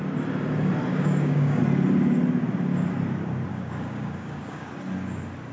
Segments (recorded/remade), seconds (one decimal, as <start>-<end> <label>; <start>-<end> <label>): 0.0-0.9 recorded; 0.9-1.6 remade; 1.6-3.5 recorded; 3.5-4.7 remade; 4.7-5.5 recorded